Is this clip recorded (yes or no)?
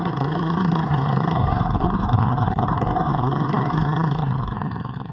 no